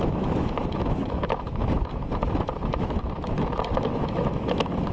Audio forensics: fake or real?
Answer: fake